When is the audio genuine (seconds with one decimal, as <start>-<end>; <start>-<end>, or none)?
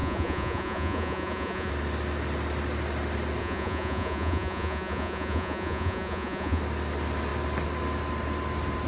1.7-3.4; 6.6-8.9